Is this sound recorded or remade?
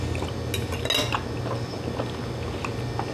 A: recorded